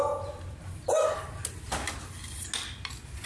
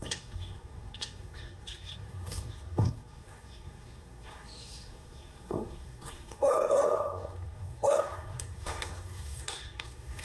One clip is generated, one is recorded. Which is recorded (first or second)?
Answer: first